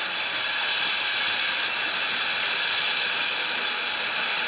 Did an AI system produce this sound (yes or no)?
no